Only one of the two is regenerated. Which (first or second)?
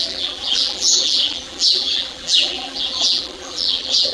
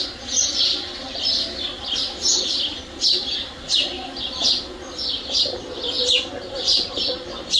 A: first